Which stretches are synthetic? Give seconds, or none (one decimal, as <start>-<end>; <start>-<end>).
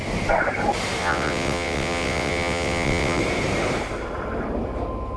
1.0-3.2